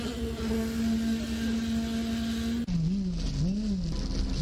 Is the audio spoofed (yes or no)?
no